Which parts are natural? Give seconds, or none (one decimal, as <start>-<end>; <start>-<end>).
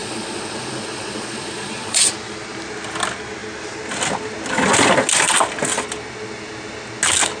2.1-7.4